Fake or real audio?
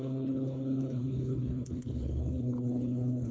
fake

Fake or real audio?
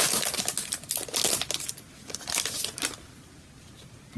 real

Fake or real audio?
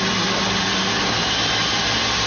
real